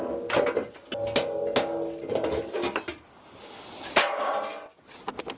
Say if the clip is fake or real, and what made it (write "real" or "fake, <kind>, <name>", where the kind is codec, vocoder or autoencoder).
real